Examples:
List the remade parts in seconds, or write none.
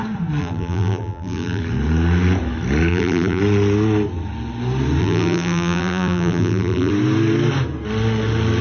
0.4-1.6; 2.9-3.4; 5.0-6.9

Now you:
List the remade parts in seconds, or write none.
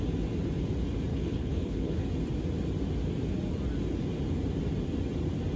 1.1-2.0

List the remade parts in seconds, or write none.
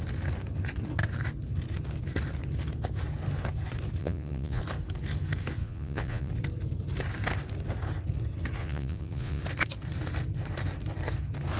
4.0-4.6; 5.6-6.3; 8.6-9.4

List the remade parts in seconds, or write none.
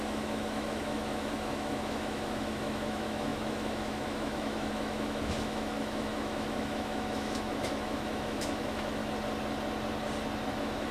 0.0-9.0; 10.5-10.9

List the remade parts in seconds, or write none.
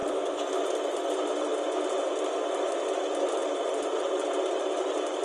0.0-0.5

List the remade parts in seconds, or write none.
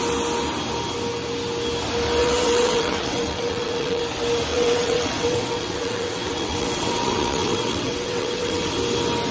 2.2-4.0; 4.5-8.7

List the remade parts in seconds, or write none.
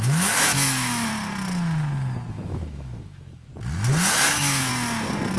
0.0-1.1; 2.3-3.5; 4.1-4.7